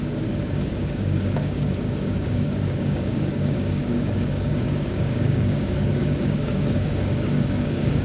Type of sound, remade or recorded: remade